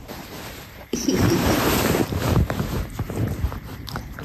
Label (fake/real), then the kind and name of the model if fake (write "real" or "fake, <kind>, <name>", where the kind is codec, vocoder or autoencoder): fake, vocoder, BigVGAN v2